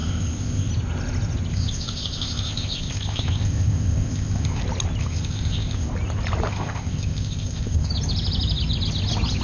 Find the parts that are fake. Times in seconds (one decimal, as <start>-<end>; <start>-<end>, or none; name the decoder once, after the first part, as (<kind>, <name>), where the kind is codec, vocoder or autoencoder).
0.0-0.7 (codec, ZipCodec); 1.5-4.6; 5.0-5.9; 6.5-7.9